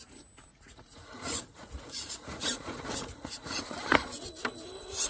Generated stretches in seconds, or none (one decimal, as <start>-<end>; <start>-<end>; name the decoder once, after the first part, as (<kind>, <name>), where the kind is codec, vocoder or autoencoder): 0.5-3.6 (vocoder, Vocos)